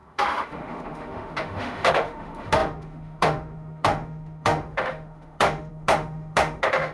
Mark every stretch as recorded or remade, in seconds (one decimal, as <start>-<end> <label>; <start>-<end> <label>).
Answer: 0.0-6.9 remade